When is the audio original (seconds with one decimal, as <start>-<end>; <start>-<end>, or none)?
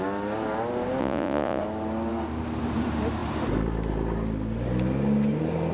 0.0-1.0; 1.6-5.7